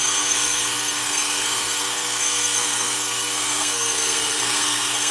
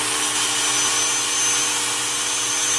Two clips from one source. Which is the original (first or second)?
second